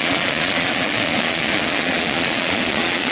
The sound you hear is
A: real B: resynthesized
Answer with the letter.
B